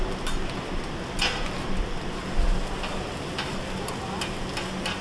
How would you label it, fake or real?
real